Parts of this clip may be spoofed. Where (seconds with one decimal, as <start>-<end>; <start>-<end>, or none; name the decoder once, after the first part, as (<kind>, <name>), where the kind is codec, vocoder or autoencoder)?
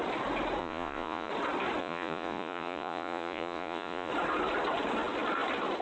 0.6-1.3 (vocoder, Vocos); 1.8-4.1